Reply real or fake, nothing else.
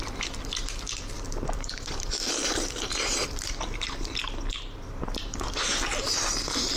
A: fake